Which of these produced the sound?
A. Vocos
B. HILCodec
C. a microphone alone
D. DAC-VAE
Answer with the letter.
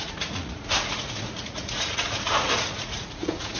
A